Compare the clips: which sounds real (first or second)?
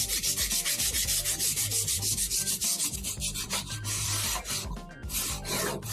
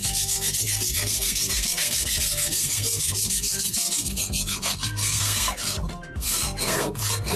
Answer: first